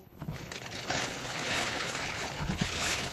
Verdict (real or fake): fake